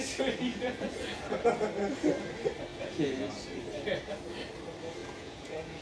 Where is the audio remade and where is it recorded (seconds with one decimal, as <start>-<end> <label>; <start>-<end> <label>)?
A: 0.0-0.5 recorded; 0.5-1.2 remade; 1.2-2.7 recorded; 2.7-3.3 remade; 3.3-5.0 recorded; 5.0-5.8 remade